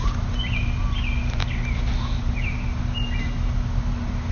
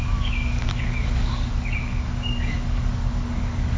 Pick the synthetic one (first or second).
second